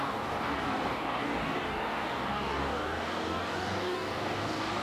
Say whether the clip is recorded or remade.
remade